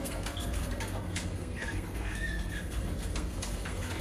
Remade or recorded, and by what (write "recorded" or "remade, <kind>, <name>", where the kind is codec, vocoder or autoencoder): remade, codec, SNAC